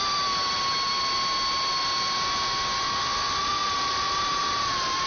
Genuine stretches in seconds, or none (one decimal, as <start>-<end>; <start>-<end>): 0.0-5.1